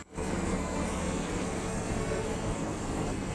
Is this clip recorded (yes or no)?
no